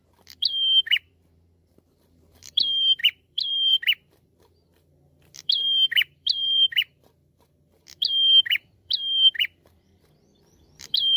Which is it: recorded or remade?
remade